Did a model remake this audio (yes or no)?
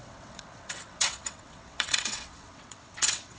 yes